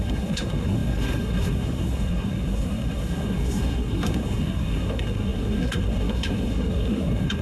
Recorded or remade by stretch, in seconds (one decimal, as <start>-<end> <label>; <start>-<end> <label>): 0.0-7.4 remade